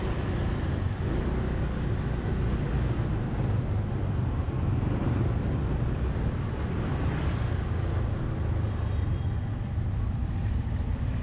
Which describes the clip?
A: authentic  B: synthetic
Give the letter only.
A